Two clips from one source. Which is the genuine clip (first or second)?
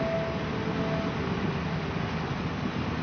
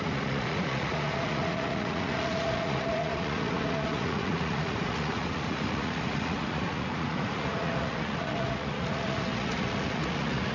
first